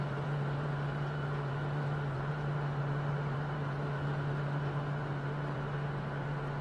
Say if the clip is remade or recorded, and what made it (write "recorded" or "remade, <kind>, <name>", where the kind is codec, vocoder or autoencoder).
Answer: remade, vocoder, BigVGAN v2